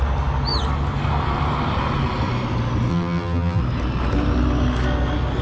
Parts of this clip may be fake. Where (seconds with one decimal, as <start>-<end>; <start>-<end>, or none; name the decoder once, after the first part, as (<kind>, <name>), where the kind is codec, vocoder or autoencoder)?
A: 2.9-3.6 (vocoder, BigVGAN v2)

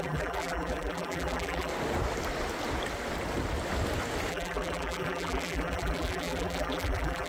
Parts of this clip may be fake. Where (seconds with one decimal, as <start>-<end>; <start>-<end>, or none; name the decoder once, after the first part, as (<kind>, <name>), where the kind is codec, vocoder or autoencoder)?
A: 0.0-1.7 (vocoder, BigVGAN v2); 4.3-7.3